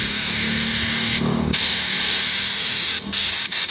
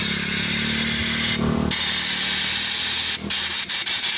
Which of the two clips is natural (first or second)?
second